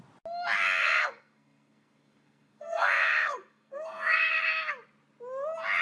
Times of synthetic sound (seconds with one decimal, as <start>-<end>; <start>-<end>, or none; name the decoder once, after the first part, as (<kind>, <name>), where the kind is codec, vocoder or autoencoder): 0.8-4.3 (codec, SNAC)